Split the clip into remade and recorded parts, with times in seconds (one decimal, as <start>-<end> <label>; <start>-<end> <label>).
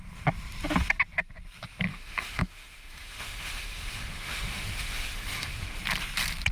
0.0-1.9 recorded; 1.9-5.8 remade; 5.8-6.5 recorded